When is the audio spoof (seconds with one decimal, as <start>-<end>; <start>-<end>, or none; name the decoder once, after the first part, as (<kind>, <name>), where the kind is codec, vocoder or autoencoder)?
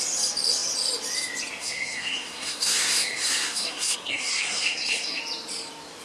1.6-5.2 (codec, SNAC)